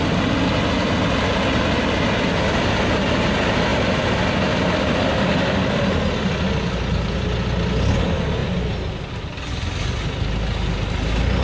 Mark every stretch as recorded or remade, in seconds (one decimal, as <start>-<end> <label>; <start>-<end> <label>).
0.0-11.4 recorded